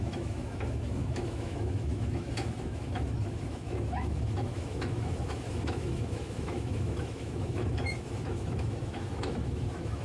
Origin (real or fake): fake